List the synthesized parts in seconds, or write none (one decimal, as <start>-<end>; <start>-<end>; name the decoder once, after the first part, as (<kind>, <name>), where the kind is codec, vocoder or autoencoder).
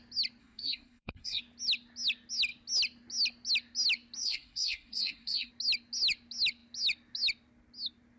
0.4-1.4 (codec, SNAC); 4.2-5.5